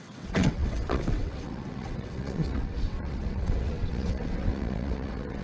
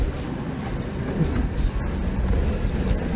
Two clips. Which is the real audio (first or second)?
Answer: second